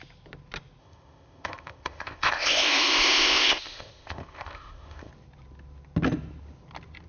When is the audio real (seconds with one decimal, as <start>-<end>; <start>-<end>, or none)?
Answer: 0.0-0.8; 5.1-7.1